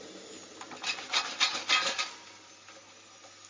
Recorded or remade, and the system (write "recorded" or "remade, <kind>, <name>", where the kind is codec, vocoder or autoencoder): recorded